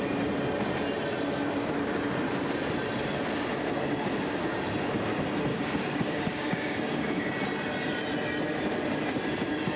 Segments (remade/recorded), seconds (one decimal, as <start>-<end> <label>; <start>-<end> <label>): 0.0-5.5 recorded; 5.5-7.3 remade; 7.3-9.8 recorded